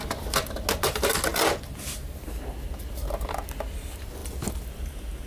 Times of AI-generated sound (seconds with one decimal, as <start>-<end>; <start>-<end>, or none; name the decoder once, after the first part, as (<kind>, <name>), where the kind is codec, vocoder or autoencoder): none

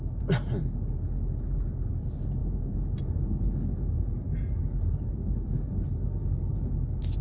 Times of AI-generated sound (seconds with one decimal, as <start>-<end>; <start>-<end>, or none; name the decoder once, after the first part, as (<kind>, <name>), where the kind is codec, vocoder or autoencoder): none

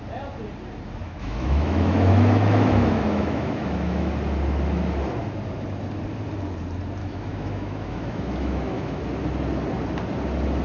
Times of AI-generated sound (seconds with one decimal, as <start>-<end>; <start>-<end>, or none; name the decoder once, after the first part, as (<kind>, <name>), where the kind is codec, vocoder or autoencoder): 1.0-4.1 (autoencoder, DAC-VAE); 7.0-9.0

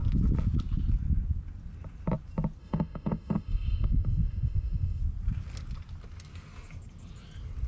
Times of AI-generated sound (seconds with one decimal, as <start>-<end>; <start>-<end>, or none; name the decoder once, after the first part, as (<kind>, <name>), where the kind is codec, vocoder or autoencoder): 2.6-5.0 (autoencoder, DAC-VAE)

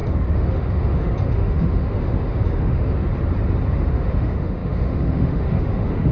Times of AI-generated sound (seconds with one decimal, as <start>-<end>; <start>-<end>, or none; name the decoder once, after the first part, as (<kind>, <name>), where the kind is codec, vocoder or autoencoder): 0.0-3.1 (autoencoder, DAC-VAE); 3.7-6.1